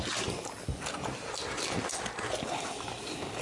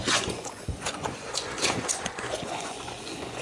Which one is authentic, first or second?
first